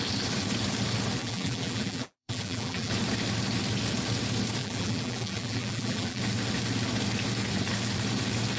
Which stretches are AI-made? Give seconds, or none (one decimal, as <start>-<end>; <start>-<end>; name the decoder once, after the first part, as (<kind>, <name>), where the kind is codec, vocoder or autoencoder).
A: 1.2-2.9 (vocoder, BigVGAN v2); 4.6-6.2